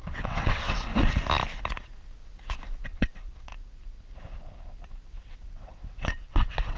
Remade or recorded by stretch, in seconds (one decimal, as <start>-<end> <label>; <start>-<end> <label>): 0.0-0.9 remade; 0.9-2.8 recorded; 2.8-3.5 remade; 3.5-5.1 recorded; 5.1-6.8 remade